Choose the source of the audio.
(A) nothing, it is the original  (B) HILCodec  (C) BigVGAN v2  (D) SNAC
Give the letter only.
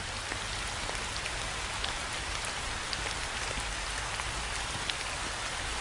A